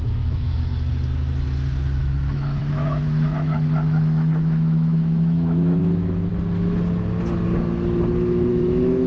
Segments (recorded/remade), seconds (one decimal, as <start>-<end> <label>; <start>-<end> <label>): 0.0-0.7 remade; 0.7-2.0 recorded; 2.0-6.3 remade; 6.3-8.5 recorded; 8.5-9.1 remade